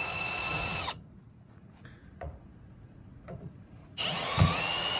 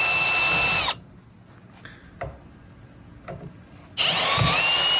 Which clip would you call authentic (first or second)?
second